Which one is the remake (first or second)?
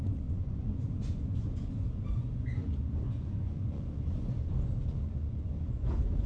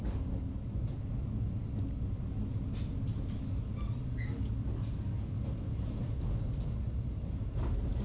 first